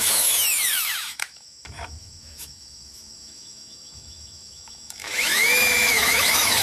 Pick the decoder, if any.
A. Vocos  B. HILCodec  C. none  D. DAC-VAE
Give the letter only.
D